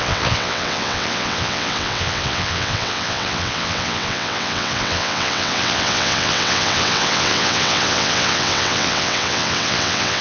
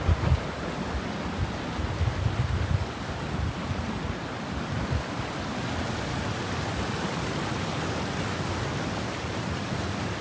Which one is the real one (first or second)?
second